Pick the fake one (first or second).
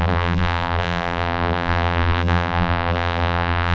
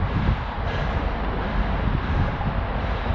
first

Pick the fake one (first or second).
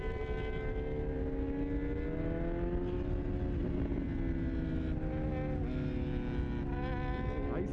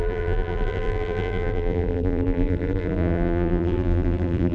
second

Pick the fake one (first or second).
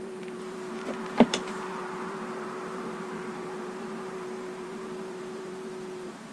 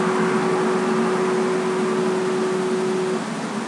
first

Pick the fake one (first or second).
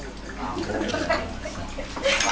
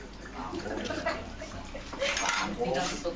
second